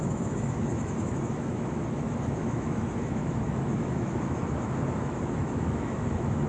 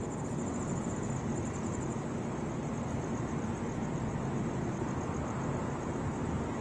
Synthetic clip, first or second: first